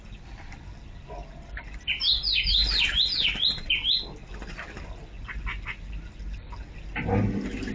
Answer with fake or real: real